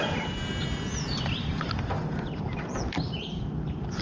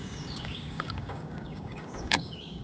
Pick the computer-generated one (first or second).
second